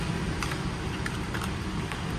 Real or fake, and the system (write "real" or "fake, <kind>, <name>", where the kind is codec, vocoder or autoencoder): real